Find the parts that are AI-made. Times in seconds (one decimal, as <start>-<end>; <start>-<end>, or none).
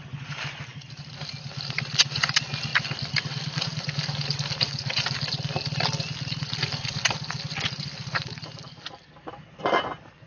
0.7-1.2